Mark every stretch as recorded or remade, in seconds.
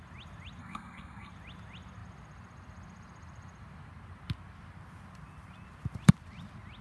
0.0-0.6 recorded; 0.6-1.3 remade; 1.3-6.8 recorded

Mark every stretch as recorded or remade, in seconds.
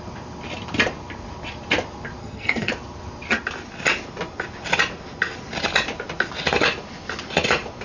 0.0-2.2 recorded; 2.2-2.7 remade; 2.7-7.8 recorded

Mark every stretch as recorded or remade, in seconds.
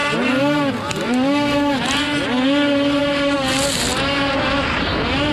0.0-5.3 recorded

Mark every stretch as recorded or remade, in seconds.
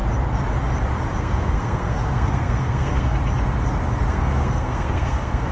0.0-1.2 recorded; 1.2-3.2 remade; 3.2-4.1 recorded; 4.1-5.5 remade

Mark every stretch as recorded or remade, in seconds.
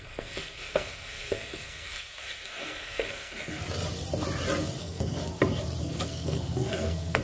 0.0-3.6 remade; 3.6-4.8 recorded; 4.8-5.2 remade; 5.2-5.8 recorded; 5.8-7.2 remade